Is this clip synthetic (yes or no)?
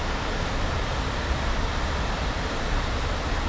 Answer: no